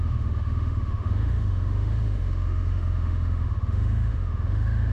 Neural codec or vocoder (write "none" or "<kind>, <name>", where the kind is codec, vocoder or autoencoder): autoencoder, DAC-VAE